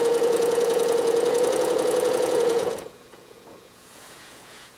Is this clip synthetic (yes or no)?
yes